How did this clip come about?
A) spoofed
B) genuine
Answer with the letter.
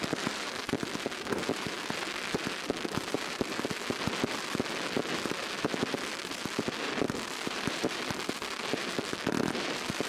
A